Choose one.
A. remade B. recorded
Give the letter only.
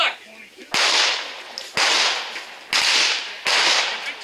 B